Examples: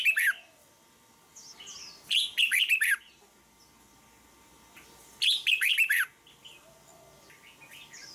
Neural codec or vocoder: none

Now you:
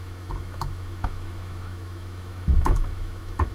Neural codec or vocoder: autoencoder, DAC-VAE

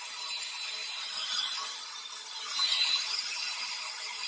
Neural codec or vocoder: none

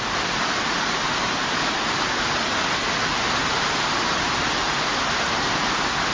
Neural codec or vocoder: none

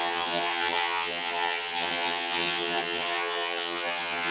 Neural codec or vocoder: vocoder, HiFi-GAN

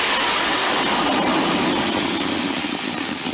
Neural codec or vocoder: none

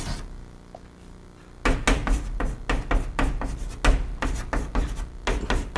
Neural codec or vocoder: none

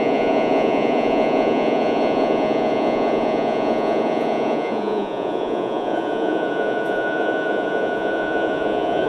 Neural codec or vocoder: vocoder, Vocos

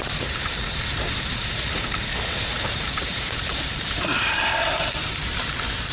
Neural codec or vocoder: vocoder, BigVGAN v2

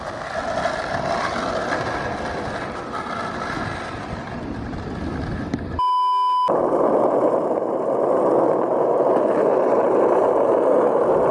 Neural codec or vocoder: none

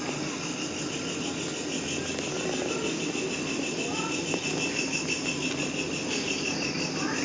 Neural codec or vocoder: none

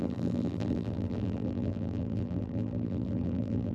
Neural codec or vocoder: vocoder, BigVGAN v2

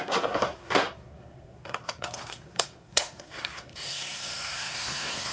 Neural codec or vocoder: codec, SNAC